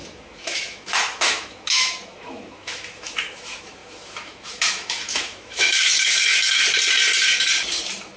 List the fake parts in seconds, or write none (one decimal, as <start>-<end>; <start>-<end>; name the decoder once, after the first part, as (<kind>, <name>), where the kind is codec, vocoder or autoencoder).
0.0-6.6 (autoencoder, DAC-VAE)